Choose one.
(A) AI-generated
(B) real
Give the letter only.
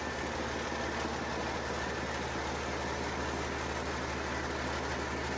B